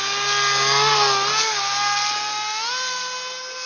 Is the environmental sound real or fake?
real